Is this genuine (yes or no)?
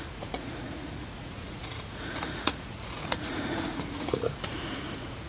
no